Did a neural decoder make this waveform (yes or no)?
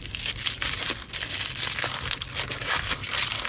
no